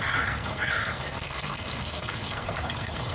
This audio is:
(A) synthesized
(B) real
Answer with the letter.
A